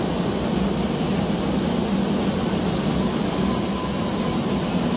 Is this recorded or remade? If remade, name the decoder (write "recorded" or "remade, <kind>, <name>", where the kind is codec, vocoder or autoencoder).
recorded